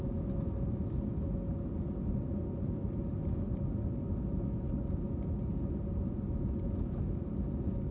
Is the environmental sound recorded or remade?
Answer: recorded